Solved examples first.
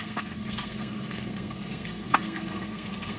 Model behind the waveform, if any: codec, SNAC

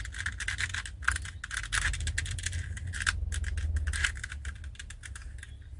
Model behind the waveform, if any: none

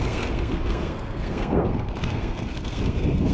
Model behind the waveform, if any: codec, SNAC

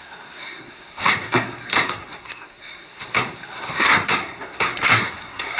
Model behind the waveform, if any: codec, SNAC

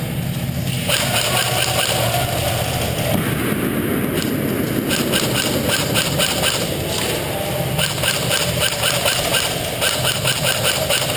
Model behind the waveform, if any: none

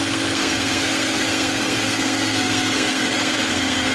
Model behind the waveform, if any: codec, SNAC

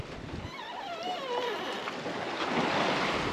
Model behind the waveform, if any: none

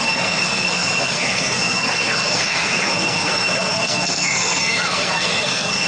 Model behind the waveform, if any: codec, SNAC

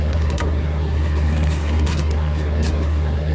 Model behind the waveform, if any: codec, SNAC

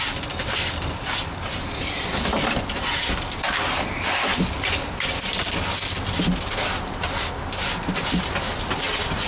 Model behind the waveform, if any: none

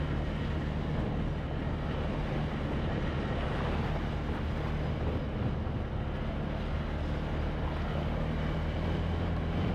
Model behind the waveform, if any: none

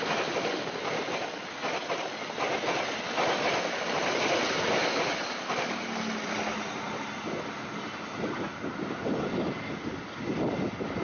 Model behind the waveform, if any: none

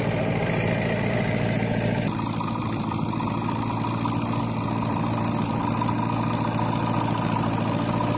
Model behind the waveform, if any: none